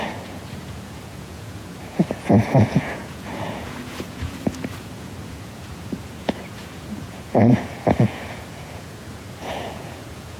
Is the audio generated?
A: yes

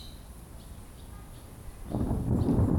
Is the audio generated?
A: yes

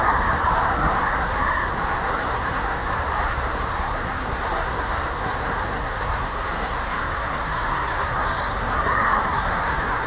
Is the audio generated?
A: yes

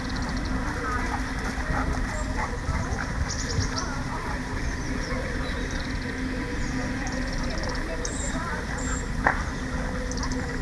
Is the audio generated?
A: yes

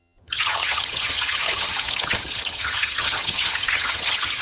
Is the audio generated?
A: yes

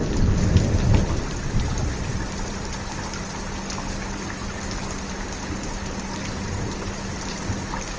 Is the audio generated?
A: no